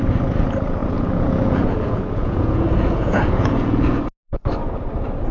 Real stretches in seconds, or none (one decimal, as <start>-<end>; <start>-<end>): 0.0-0.8; 4.0-5.3